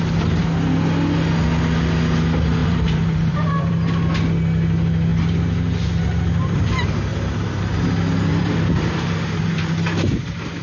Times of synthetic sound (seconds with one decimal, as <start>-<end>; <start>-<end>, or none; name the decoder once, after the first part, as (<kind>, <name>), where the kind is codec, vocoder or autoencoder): 2.6-3.7 (vocoder, BigVGAN v2); 7.1-7.6; 8.3-9.5